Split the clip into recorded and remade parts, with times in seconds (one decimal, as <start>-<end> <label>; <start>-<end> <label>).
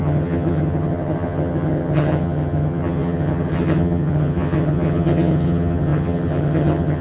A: 0.0-7.0 remade